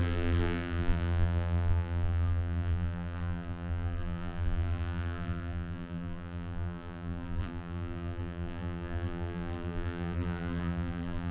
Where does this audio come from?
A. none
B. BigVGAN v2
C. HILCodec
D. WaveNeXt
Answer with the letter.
B